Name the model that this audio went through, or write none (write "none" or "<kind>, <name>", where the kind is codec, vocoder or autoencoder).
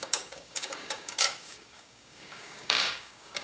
codec, DAC